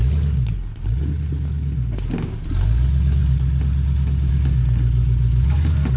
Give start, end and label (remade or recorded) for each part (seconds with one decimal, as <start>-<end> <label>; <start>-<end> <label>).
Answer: 0.0-6.0 recorded